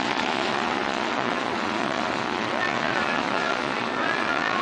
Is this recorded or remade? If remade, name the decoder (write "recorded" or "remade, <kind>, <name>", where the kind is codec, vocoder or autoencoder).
remade, vocoder, Vocos